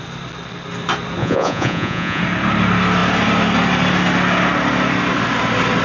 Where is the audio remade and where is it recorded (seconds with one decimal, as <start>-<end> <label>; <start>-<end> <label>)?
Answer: 0.0-1.2 recorded; 1.2-2.2 remade; 2.2-5.8 recorded